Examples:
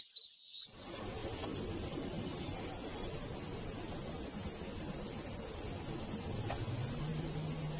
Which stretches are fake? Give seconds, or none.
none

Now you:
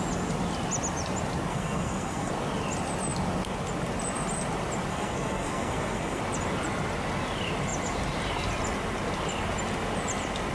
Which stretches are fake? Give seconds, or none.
1.5-2.3 (codec, SNAC); 4.9-6.2

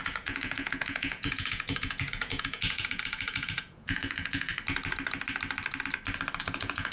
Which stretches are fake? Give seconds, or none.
0.0-4.5 (vocoder, Vocos); 6.4-6.9